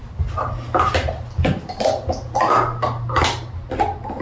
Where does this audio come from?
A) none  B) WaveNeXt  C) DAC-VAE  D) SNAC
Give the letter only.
A